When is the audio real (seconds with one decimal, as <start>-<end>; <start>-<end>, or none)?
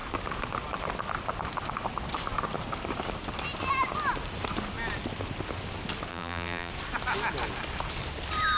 0.0-6.1; 6.7-8.6